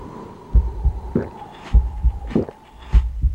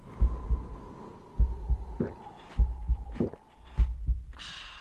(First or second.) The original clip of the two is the second